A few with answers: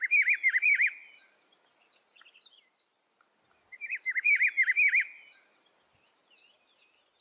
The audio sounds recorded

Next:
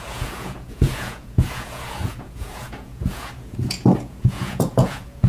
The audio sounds remade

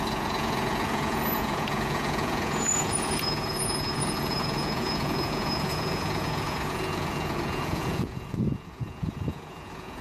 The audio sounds remade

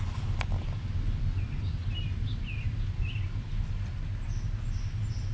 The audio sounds recorded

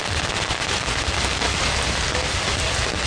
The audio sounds recorded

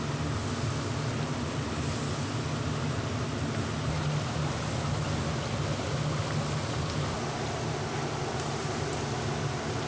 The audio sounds recorded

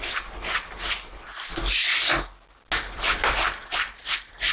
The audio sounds recorded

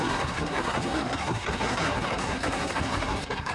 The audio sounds remade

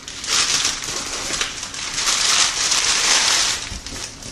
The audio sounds recorded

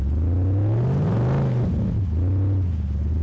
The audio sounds recorded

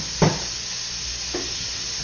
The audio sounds recorded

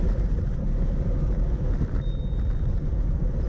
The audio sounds recorded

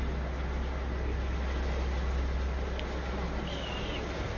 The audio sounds recorded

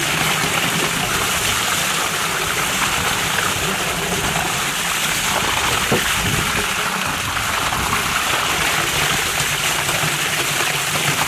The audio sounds recorded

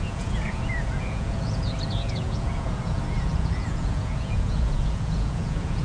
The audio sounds remade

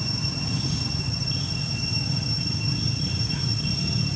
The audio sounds recorded